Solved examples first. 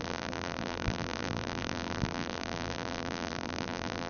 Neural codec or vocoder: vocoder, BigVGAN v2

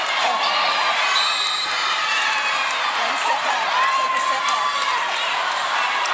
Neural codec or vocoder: vocoder, BigVGAN v2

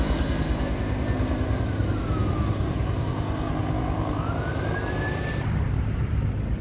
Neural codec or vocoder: none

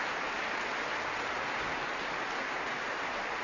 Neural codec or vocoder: none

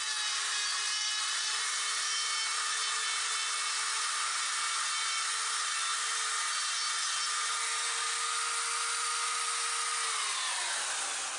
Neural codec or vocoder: none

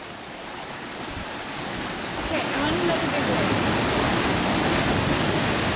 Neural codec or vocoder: none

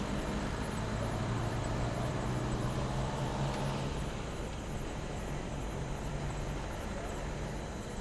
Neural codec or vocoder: vocoder, BigVGAN v2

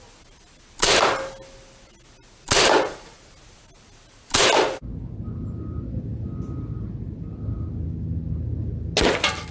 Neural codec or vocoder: none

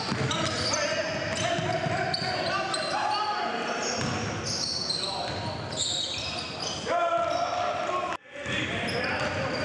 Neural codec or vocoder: none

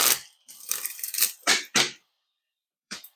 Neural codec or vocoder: vocoder, BigVGAN v2